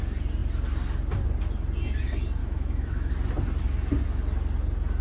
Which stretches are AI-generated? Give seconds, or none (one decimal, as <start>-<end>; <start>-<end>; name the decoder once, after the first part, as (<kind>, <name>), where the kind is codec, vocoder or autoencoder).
2.4-3.1 (autoencoder, DAC-VAE)